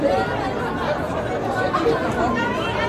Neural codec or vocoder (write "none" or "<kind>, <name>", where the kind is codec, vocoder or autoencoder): none